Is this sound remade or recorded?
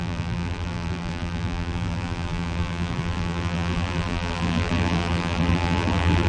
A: remade